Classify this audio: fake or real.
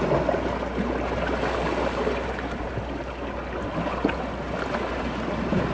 real